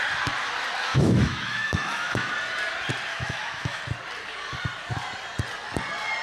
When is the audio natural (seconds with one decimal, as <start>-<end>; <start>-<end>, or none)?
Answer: 0.0-0.9; 2.3-3.1; 3.8-6.2